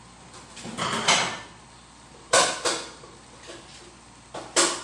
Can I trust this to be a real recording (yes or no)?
yes